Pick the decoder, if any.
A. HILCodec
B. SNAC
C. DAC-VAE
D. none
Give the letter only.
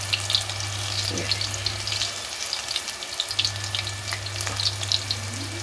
D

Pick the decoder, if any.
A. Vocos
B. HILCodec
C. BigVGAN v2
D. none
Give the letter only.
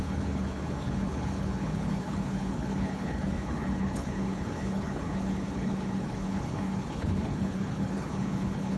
B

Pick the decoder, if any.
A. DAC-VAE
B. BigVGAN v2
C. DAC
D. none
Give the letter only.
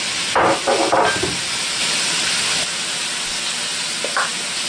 D